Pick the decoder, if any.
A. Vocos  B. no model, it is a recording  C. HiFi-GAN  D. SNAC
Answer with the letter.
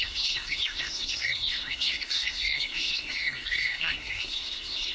D